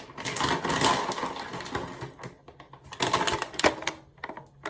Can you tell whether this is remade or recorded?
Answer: recorded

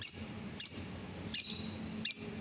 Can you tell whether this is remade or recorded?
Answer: recorded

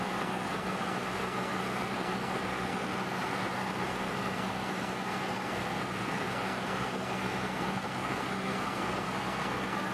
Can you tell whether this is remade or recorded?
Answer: remade